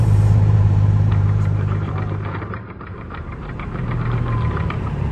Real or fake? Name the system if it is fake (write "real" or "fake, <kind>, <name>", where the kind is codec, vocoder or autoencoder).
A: fake, vocoder, BigVGAN v2